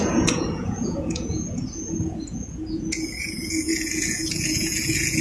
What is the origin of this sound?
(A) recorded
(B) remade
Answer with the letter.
B